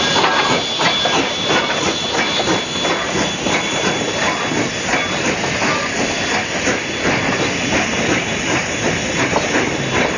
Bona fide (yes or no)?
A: yes